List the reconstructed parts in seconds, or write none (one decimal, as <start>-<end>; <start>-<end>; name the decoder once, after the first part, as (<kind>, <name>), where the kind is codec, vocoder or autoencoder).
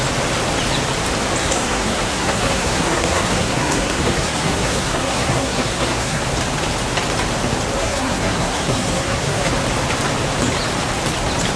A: 1.4-6.2 (codec, SNAC); 7.8-9.5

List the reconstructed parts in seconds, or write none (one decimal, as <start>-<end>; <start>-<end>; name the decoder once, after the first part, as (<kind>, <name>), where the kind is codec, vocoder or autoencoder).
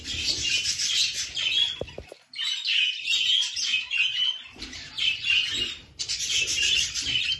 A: 0.0-1.1 (vocoder, BigVGAN v2); 5.0-7.4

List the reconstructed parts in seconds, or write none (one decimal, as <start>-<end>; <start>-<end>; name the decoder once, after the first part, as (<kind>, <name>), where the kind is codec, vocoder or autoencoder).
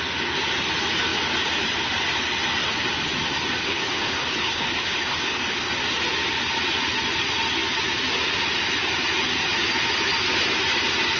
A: 3.7-5.7 (codec, HILCodec)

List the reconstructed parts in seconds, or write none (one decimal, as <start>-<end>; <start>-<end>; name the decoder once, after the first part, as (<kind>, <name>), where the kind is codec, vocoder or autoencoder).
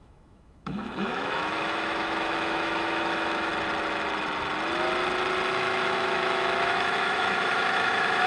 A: 0.0-3.5 (autoencoder, DAC-VAE); 5.5-8.3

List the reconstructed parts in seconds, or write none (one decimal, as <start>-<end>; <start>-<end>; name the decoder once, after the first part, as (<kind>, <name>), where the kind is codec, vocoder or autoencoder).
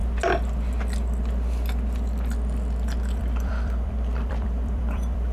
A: 3.2-5.3 (vocoder, BigVGAN v2)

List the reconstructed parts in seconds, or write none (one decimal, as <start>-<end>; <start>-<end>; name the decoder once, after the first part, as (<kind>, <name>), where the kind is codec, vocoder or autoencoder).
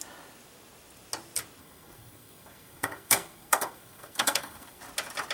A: 1.6-4.8 (codec, SNAC)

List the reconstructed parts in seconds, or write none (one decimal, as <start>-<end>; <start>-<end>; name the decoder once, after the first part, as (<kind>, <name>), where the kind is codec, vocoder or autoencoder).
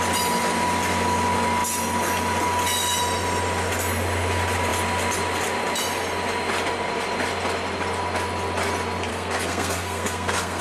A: 9.1-10.6 (codec, SNAC)